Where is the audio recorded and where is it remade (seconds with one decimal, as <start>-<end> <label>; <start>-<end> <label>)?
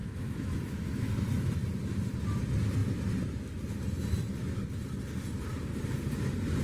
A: 0.0-1.1 remade; 1.1-6.6 recorded